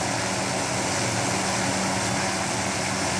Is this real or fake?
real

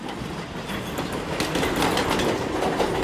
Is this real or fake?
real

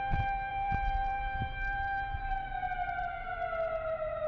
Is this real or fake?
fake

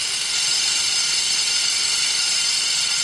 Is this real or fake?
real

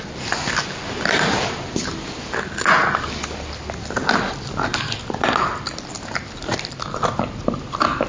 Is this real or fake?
fake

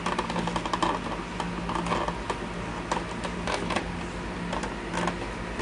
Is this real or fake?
real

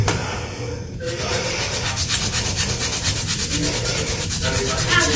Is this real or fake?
real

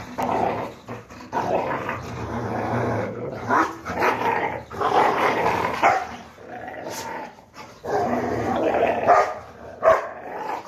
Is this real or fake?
fake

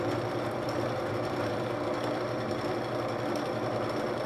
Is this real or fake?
fake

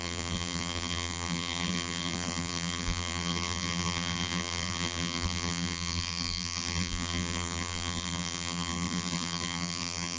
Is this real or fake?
fake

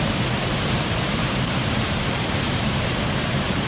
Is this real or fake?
fake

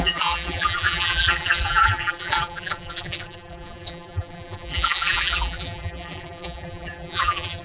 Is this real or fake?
fake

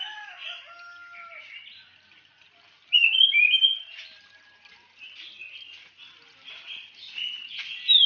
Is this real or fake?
real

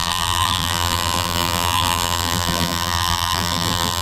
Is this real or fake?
fake